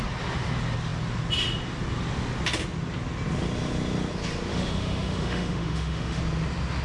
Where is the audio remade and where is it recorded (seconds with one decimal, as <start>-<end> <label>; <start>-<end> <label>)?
0.0-4.5 recorded; 4.5-6.2 remade; 6.2-6.8 recorded

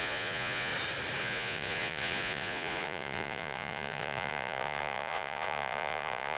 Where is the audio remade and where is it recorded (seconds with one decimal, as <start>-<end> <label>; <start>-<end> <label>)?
0.0-0.7 remade; 0.7-1.2 recorded; 1.2-6.4 remade

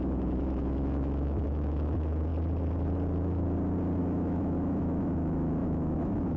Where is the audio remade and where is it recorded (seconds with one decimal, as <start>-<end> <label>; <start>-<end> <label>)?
0.0-2.3 remade; 2.3-4.0 recorded; 4.0-6.4 remade

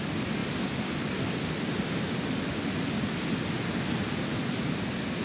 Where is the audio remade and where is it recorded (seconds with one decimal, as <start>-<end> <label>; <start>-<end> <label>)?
0.0-5.2 recorded

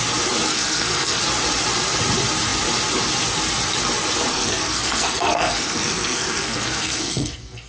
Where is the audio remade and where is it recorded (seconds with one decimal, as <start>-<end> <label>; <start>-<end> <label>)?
0.0-0.5 recorded; 0.5-1.2 remade; 1.2-4.3 recorded; 4.3-7.7 remade